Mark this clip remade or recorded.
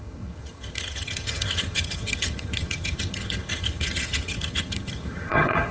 remade